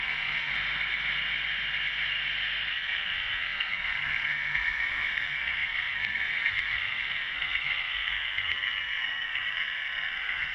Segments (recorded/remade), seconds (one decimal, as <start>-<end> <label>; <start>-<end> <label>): 0.0-0.5 remade; 0.5-2.7 recorded; 2.7-10.5 remade